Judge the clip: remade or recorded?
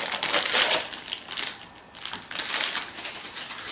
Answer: recorded